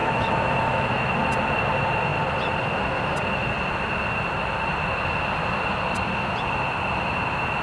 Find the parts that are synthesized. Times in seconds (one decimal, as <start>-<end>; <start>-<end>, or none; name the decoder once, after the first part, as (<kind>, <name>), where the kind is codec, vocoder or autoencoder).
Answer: 0.0-1.0 (autoencoder, DAC-VAE)